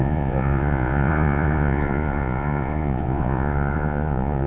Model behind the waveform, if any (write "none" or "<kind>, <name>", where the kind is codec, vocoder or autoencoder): vocoder, Vocos